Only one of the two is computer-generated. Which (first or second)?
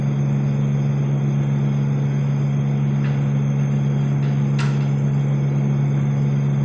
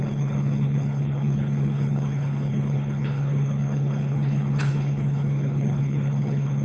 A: second